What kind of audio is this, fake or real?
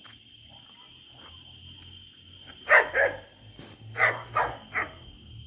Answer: real